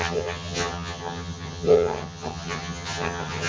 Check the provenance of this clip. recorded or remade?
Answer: remade